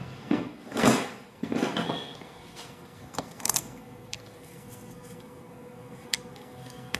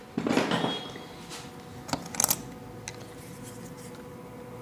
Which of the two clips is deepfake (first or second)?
first